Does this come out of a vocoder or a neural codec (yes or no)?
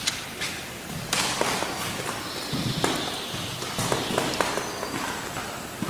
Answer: no